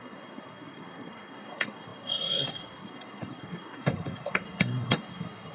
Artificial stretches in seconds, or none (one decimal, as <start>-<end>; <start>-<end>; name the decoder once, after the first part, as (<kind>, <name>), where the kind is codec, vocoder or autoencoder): 0.0-5.5 (codec, SNAC)